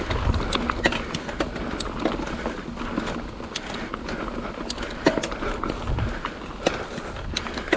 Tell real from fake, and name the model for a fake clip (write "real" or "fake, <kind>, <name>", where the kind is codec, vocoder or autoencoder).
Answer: real